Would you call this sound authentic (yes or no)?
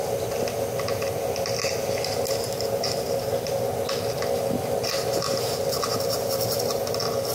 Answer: yes